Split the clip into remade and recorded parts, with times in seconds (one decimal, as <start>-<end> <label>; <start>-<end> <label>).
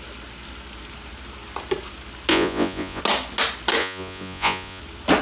0.0-2.3 recorded; 2.3-3.0 remade; 3.0-3.8 recorded; 3.8-4.8 remade; 4.8-5.2 recorded